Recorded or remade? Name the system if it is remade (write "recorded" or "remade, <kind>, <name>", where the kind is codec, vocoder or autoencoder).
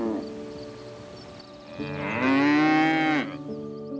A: recorded